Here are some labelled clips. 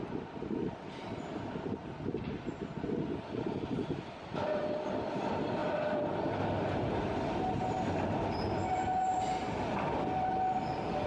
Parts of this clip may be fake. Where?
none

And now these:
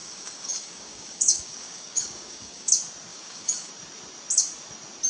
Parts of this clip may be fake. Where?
0.0-2.7; 3.1-3.7

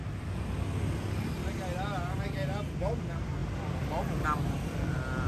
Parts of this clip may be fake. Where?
none